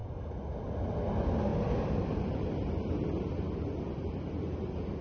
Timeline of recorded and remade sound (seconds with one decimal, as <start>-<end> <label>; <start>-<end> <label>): 0.0-5.0 recorded